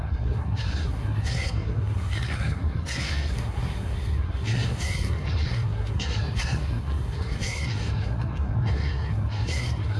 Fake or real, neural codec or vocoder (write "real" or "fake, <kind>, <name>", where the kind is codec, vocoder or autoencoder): fake, codec, SNAC